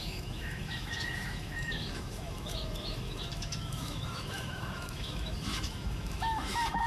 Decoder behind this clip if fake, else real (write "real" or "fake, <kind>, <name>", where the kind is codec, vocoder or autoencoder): fake, autoencoder, DAC-VAE